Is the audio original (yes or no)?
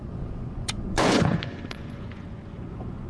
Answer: no